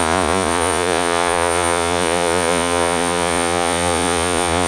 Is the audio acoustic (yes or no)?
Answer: no